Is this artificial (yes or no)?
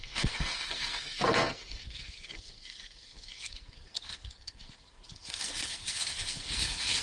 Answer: yes